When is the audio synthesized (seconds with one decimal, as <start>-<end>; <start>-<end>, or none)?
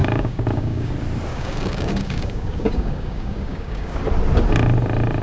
0.0-0.9; 1.3-4.0